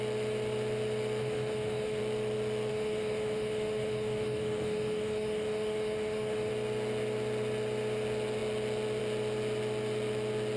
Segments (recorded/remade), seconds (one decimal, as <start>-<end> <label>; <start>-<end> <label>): 0.0-1.2 recorded; 1.2-2.0 remade; 2.0-2.7 recorded; 2.7-6.5 remade; 6.5-10.6 recorded